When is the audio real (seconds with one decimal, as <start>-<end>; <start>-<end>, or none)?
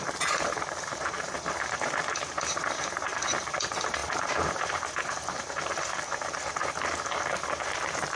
none